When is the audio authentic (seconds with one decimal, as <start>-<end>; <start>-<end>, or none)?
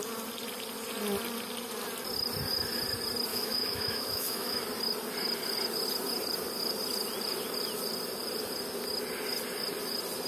0.0-3.3; 4.6-10.3